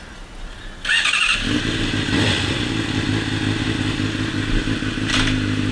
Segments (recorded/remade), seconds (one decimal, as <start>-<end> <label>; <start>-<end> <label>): 0.0-5.7 recorded